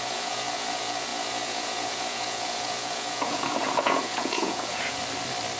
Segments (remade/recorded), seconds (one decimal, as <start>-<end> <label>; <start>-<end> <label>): 0.0-5.0 remade; 5.0-5.6 recorded